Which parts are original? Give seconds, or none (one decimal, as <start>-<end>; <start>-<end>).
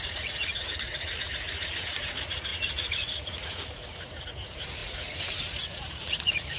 none